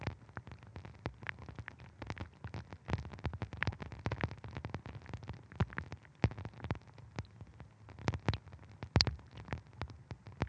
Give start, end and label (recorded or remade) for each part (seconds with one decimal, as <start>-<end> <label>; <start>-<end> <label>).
0.0-10.5 recorded